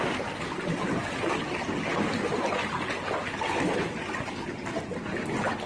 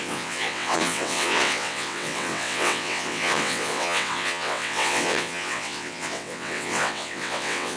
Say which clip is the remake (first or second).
second